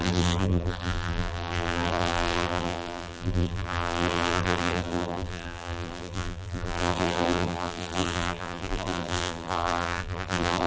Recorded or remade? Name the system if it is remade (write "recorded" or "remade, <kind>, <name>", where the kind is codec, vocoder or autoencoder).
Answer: remade, vocoder, BigVGAN v2